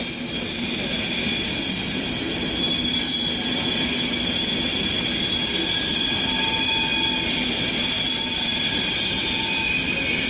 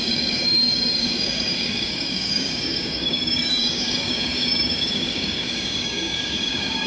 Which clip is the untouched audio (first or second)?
first